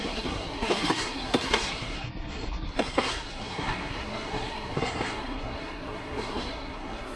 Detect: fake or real fake